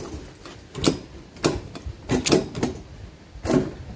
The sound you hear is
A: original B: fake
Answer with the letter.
A